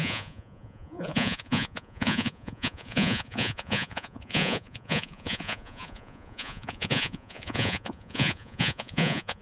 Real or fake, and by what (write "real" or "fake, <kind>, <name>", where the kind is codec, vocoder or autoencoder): fake, vocoder, Vocos